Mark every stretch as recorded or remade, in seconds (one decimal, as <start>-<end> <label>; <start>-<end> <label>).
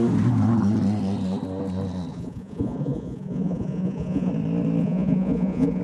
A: 0.0-2.1 recorded; 2.1-4.3 remade; 4.3-4.8 recorded; 4.8-5.8 remade